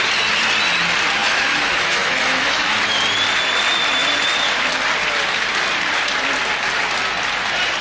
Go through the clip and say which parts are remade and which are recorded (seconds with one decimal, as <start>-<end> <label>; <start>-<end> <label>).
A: 0.0-1.2 recorded; 1.2-2.7 remade; 2.7-7.8 recorded